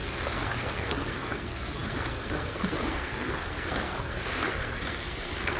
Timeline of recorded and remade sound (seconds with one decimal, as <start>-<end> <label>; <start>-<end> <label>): 0.0-5.6 remade